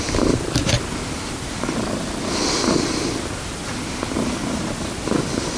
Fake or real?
real